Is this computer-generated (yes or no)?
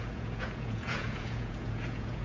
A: yes